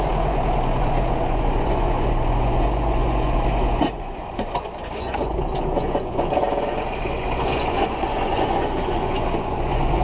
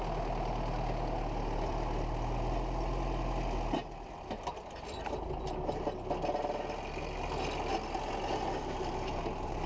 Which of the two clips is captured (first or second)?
second